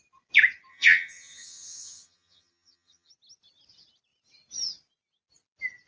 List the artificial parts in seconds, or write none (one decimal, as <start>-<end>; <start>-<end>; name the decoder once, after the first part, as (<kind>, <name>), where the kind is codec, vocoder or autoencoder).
0.7-3.1 (vocoder, HiFi-GAN)